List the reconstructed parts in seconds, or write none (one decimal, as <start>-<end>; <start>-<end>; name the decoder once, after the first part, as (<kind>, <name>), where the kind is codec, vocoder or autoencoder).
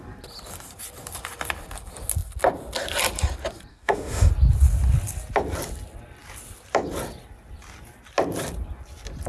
3.7-4.3 (autoencoder, DAC-VAE)